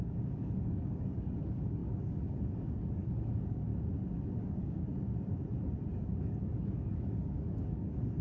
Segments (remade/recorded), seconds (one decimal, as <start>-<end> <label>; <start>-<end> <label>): 0.0-3.7 remade; 3.7-4.4 recorded; 4.4-4.9 remade; 4.9-5.9 recorded; 5.9-8.2 remade